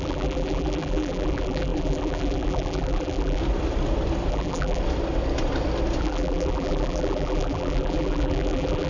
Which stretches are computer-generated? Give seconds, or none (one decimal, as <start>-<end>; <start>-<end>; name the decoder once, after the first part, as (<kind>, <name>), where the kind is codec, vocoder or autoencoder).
0.0-3.4 (vocoder, BigVGAN v2); 4.3-4.8; 6.0-8.9